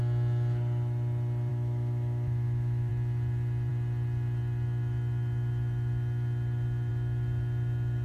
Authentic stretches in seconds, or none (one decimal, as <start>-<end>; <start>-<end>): 0.0-1.5; 2.9-8.0